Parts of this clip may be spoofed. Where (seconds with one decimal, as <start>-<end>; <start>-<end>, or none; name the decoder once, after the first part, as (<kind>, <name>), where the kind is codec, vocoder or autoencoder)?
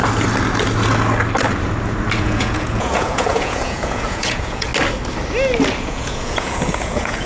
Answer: 2.2-4.7 (vocoder, Vocos); 5.8-7.3